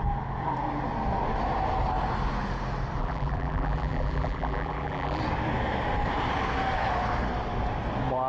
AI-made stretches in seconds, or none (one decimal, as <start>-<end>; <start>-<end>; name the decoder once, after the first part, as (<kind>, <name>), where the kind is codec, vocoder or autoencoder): 3.0-5.2 (vocoder, BigVGAN v2)